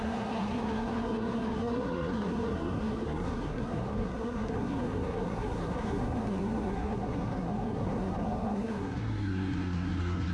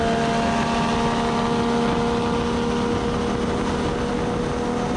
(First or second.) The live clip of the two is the second